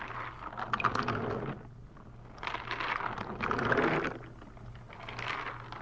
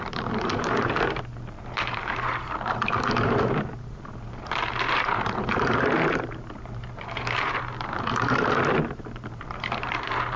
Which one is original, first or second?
first